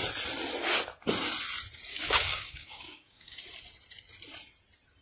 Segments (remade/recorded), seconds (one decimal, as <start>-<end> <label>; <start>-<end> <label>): 0.0-1.9 recorded; 1.9-3.4 remade; 3.4-5.0 recorded